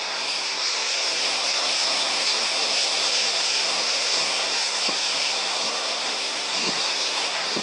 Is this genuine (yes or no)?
no